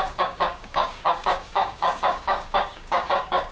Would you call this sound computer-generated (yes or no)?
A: yes